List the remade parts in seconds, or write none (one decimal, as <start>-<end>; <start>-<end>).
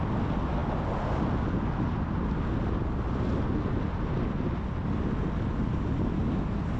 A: none